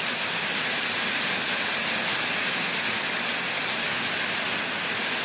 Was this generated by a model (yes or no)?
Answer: no